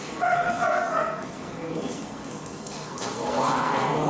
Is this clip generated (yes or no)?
yes